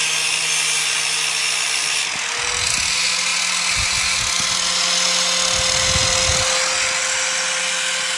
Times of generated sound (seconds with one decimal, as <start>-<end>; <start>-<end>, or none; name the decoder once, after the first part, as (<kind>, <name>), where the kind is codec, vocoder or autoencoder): none